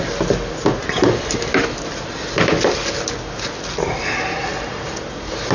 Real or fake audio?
real